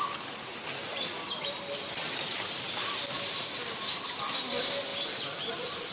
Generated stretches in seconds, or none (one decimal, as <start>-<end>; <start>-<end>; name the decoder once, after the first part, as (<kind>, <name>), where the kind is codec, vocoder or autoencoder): none